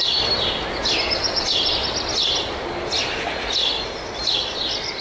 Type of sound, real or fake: real